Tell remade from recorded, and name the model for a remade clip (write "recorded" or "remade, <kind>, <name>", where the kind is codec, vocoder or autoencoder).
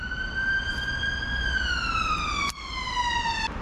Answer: recorded